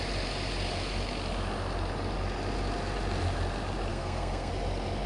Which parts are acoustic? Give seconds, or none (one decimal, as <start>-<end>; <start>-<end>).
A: 0.0-3.9; 4.5-5.1